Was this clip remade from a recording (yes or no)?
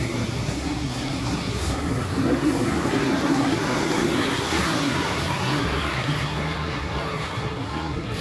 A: yes